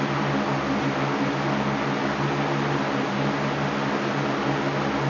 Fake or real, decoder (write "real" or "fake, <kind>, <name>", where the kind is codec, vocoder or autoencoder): real